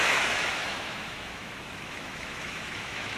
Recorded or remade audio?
remade